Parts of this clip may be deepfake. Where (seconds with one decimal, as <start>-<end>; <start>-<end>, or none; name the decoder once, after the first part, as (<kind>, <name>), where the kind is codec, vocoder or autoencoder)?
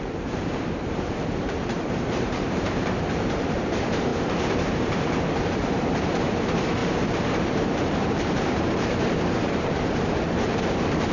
0.0-4.1 (vocoder, BigVGAN v2); 5.5-11.1